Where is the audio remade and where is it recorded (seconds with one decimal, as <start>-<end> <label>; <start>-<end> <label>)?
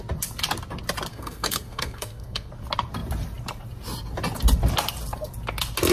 0.0-1.1 recorded; 1.1-2.5 remade; 2.5-5.9 recorded